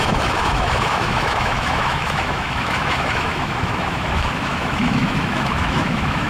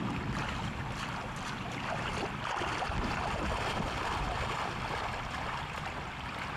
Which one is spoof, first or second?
first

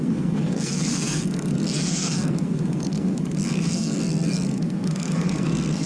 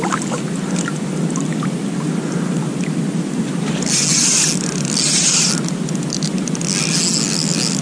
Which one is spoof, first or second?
first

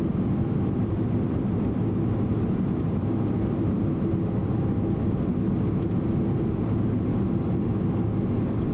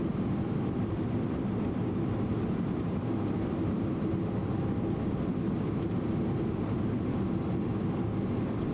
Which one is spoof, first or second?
second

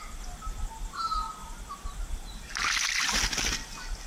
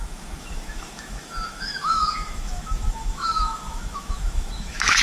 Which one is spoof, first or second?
second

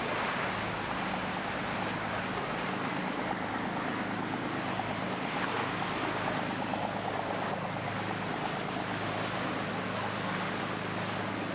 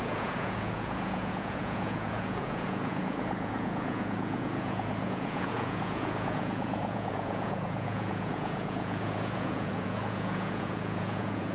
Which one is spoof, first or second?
second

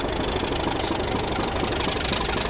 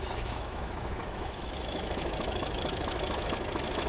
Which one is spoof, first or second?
second